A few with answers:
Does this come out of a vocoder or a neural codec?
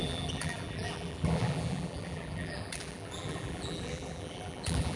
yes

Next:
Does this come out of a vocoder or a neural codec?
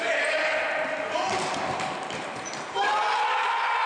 no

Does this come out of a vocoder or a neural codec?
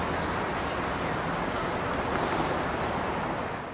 no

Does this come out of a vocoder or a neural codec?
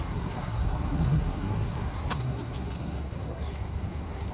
yes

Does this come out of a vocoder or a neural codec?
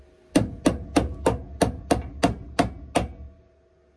no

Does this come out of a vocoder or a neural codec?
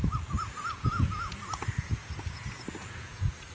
yes